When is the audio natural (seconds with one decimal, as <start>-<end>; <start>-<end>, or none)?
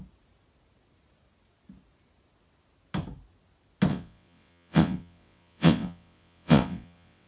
0.0-3.9